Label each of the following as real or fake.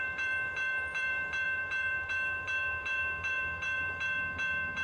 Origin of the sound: fake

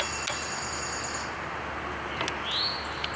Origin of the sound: real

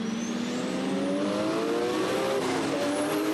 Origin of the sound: real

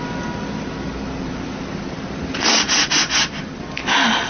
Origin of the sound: real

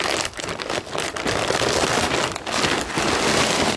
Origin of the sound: real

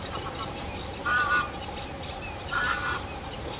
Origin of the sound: real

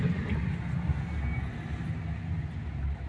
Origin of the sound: real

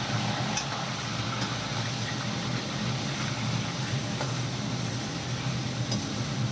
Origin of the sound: real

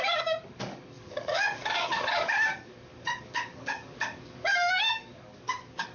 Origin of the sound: fake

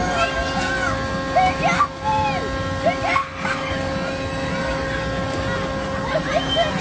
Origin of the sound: real